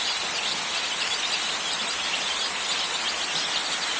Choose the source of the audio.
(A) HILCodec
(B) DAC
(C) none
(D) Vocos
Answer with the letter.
C